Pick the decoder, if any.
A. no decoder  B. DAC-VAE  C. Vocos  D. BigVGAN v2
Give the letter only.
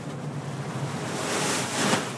A